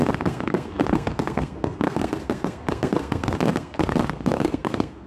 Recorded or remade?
remade